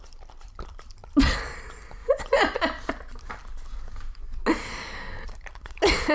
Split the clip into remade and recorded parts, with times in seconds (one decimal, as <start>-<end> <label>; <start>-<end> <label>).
0.0-2.0 recorded; 2.0-2.6 remade; 2.6-6.1 recorded